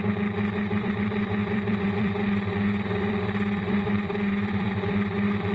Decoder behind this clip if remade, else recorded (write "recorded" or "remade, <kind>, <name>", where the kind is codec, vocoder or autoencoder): remade, vocoder, BigVGAN v2